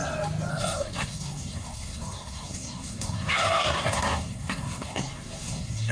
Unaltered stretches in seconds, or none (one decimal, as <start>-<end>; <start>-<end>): 0.0-0.5